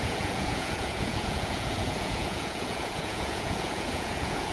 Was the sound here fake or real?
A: fake